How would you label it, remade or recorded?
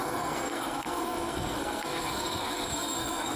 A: remade